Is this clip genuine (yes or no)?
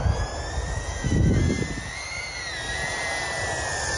yes